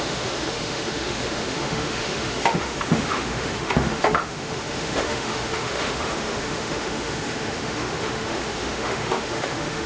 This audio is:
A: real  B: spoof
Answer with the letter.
B